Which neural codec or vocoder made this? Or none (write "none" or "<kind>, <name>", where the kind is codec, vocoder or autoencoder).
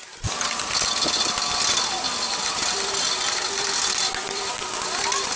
none